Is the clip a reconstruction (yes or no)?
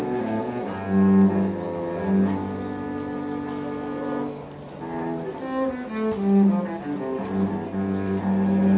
no